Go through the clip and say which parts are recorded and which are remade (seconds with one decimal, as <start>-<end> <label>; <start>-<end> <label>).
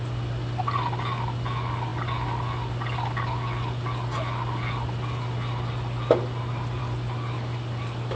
0.0-8.2 recorded